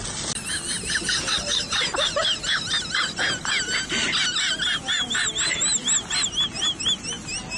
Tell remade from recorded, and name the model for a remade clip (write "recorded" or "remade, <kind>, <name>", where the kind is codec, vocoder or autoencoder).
recorded